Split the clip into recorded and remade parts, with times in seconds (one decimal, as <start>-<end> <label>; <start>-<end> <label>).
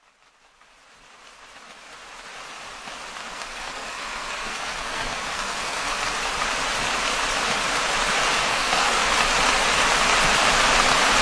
0.0-3.2 recorded; 3.2-6.0 remade; 6.0-8.5 recorded; 8.5-9.1 remade; 9.1-11.2 recorded